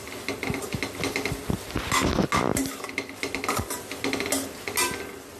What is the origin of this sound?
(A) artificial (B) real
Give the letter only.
B